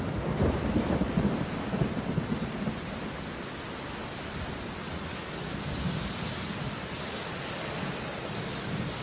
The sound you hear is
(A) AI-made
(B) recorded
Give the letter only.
B